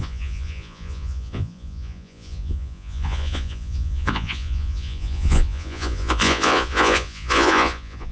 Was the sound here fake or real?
fake